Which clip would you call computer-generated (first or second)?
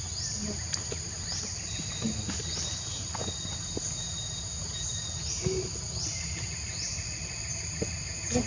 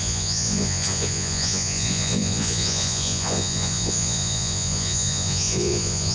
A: second